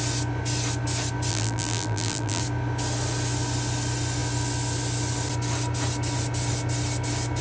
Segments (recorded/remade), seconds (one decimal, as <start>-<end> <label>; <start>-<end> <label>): 0.0-1.3 recorded; 1.3-2.4 remade; 2.4-7.4 recorded